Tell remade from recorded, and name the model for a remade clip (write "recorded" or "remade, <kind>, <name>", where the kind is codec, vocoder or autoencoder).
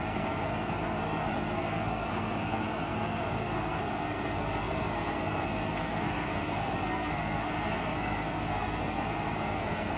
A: remade, codec, SNAC